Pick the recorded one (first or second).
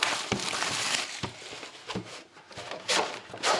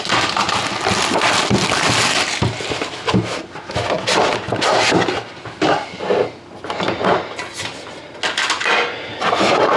second